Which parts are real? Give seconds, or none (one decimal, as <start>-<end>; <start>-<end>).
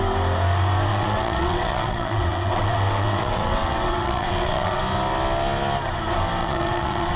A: 0.0-0.9; 4.8-6.4